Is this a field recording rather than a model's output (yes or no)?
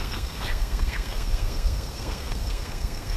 no